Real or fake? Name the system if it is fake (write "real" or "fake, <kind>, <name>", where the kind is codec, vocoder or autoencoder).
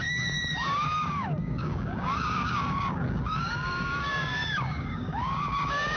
fake, codec, DAC